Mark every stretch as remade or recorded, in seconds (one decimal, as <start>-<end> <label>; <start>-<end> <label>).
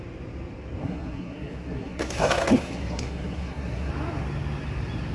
0.0-0.8 recorded; 0.8-3.9 remade; 3.9-5.1 recorded